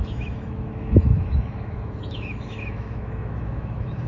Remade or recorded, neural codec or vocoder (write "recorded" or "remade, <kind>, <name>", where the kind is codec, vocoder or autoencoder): remade, autoencoder, DAC-VAE